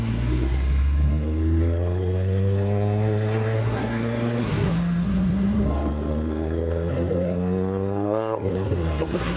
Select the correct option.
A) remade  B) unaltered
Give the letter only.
A